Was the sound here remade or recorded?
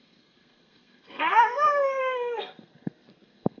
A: remade